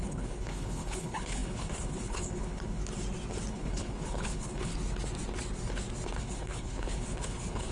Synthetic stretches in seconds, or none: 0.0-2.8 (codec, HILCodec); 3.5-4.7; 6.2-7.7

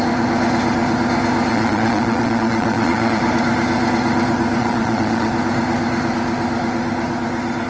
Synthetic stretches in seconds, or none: 1.5-3.2 (vocoder, Vocos); 4.6-5.3

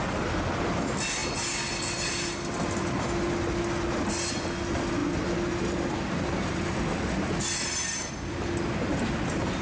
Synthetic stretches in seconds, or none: none